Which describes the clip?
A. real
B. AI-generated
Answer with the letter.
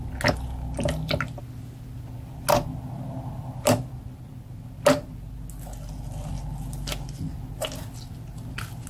A